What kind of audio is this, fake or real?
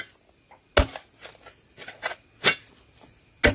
real